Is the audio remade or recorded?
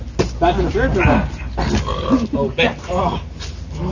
recorded